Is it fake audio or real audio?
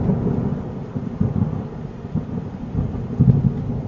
real